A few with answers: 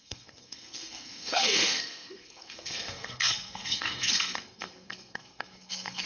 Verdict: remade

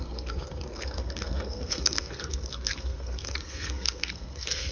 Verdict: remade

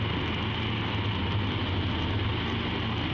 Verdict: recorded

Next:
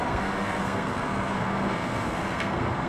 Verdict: remade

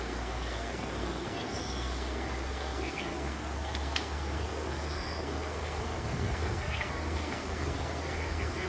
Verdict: remade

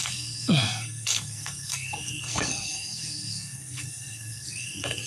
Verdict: remade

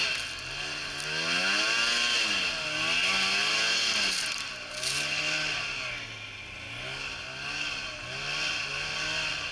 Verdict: recorded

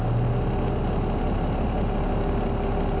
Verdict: recorded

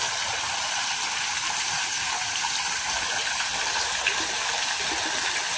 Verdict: recorded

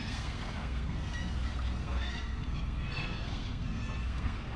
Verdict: remade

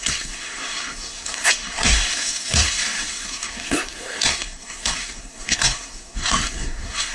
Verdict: remade